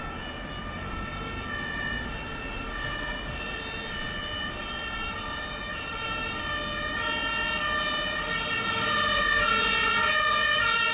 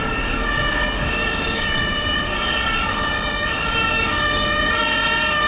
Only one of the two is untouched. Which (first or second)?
first